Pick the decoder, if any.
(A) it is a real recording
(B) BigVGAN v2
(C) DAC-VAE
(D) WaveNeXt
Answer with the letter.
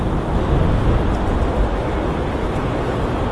A